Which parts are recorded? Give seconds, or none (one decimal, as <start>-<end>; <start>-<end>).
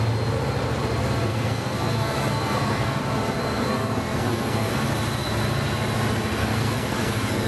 0.0-1.3; 3.0-3.4; 4.7-6.4